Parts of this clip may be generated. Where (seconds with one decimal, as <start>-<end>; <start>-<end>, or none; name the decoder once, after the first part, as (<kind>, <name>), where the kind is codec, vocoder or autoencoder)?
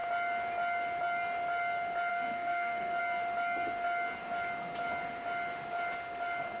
2.1-3.0 (codec, SNAC)